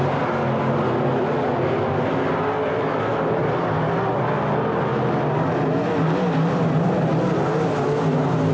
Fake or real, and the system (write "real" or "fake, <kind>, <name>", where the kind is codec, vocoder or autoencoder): real